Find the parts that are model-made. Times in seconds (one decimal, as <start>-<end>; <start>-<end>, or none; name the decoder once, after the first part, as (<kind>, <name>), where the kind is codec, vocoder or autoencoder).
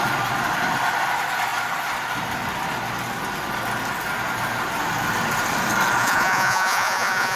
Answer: 6.0-7.4 (vocoder, Vocos)